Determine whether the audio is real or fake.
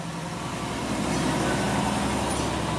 real